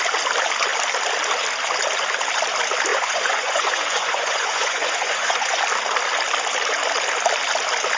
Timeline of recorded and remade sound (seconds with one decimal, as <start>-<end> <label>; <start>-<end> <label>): 0.0-2.9 recorded; 2.9-5.6 remade; 5.6-8.0 recorded